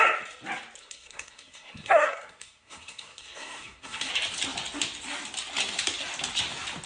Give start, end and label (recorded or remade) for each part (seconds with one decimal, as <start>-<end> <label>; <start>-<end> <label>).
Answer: 0.0-0.8 recorded; 0.8-4.1 remade; 4.1-6.9 recorded